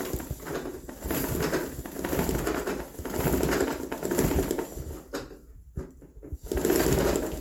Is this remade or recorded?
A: recorded